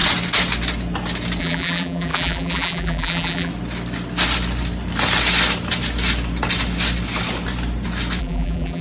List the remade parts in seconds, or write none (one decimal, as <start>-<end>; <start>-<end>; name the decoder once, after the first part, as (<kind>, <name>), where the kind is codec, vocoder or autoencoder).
1.4-3.5 (vocoder, BigVGAN v2); 8.2-8.8